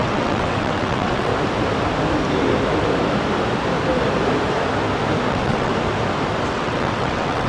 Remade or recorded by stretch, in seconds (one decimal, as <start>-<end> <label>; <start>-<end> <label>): 0.0-1.3 remade; 1.3-5.3 recorded; 5.3-5.7 remade; 5.7-6.5 recorded; 6.5-7.5 remade